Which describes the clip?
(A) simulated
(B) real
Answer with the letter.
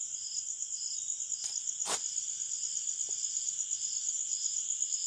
A